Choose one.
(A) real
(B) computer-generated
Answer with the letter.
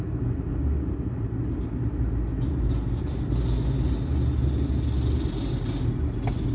A